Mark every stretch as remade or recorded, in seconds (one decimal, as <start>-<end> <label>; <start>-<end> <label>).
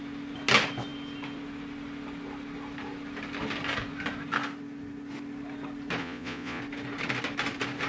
0.0-6.0 recorded; 6.0-6.6 remade; 6.6-7.9 recorded